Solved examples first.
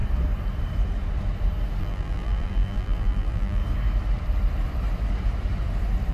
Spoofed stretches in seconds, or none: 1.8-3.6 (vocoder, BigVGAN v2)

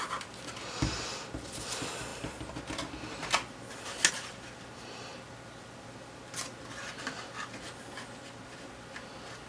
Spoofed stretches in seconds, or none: none

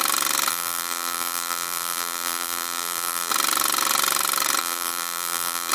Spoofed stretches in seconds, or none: 0.5-3.3 (vocoder, BigVGAN v2); 4.6-5.7

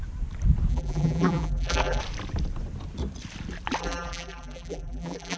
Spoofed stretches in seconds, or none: 0.7-2.0 (vocoder, BigVGAN v2); 3.8-5.4